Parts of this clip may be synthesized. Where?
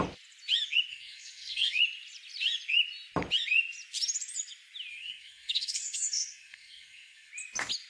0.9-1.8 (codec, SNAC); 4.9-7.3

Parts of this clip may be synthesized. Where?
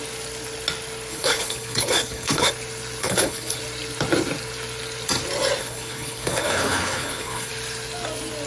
1.1-2.5 (codec, HILCodec); 3.0-3.6; 5.6-7.5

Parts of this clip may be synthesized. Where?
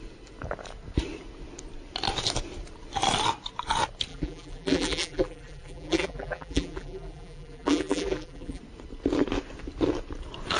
4.1-8.6 (vocoder, BigVGAN v2)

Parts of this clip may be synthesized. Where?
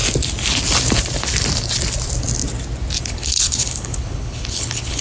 3.0-5.0 (codec, HILCodec)